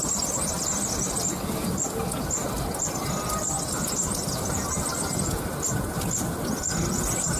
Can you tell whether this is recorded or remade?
recorded